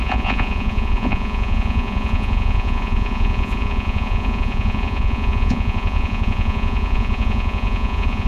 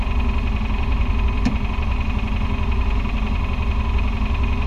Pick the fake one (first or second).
first